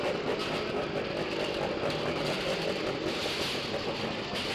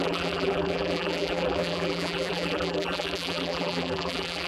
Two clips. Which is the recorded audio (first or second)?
first